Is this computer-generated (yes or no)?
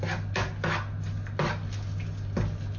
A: no